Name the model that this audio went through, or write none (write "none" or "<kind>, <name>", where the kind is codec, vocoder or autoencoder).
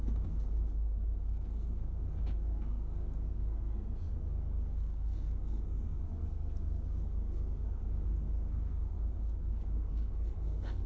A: codec, SNAC